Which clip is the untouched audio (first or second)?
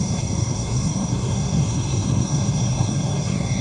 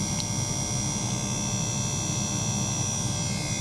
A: second